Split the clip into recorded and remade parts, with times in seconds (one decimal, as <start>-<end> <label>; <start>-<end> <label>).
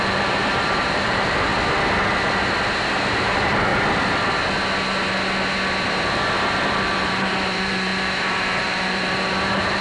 0.0-1.5 remade; 1.5-3.2 recorded; 3.2-3.7 remade; 3.7-6.7 recorded; 6.7-9.8 remade